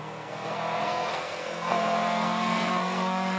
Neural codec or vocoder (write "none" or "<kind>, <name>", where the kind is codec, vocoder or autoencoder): codec, SNAC